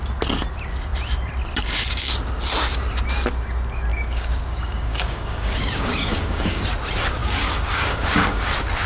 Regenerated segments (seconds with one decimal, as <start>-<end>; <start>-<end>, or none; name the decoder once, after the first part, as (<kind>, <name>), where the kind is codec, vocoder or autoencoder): 3.9-6.6 (codec, DAC); 7.2-8.5